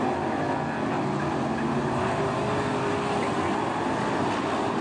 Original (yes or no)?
yes